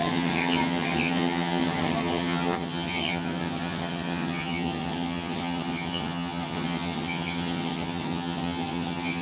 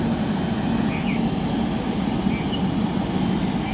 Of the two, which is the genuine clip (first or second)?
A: second